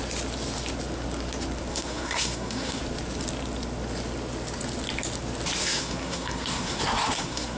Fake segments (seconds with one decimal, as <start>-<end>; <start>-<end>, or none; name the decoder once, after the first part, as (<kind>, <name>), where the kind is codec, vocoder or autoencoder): 1.7-2.8 (codec, SNAC); 5.6-7.6